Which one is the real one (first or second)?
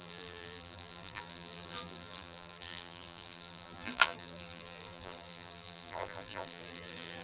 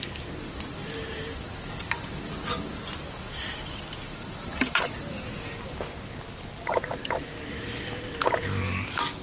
second